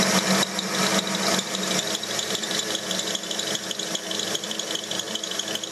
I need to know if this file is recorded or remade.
recorded